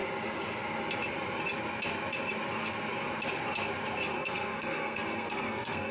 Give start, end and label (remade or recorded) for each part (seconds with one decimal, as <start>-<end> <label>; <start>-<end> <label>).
0.0-4.1 recorded; 4.1-5.9 remade